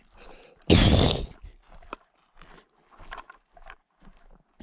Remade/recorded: recorded